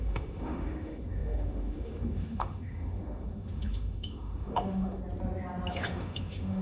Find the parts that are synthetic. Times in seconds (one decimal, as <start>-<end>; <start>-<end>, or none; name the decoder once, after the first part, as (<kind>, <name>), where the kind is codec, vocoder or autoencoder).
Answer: 0.0-5.0 (autoencoder, DAC-VAE); 5.7-6.6